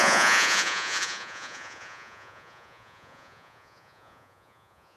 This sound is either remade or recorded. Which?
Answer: remade